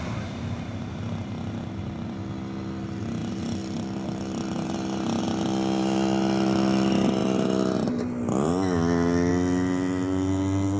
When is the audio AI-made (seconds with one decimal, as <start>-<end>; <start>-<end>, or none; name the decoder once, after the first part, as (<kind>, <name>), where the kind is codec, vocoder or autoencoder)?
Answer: none